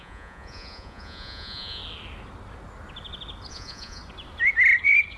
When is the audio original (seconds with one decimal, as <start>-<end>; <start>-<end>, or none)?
1.8-3.5; 4.0-5.2